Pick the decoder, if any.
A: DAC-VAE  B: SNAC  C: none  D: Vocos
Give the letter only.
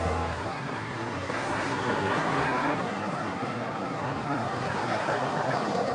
B